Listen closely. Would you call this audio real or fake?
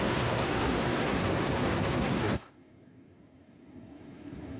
fake